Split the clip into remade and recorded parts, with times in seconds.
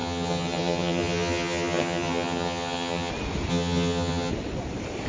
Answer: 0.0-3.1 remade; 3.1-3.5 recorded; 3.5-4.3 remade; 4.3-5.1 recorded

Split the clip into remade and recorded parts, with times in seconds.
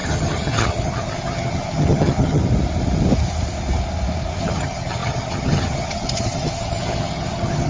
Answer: 0.0-2.4 remade; 2.4-4.4 recorded; 4.4-7.7 remade